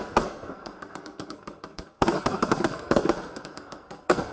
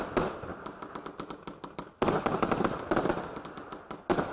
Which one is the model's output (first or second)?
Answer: first